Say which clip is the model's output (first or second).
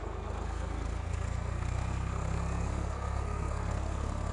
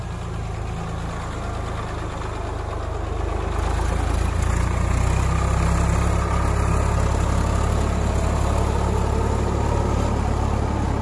first